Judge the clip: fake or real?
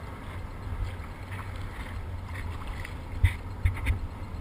real